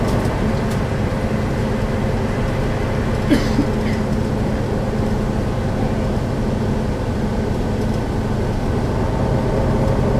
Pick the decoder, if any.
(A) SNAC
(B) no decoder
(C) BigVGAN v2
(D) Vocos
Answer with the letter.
B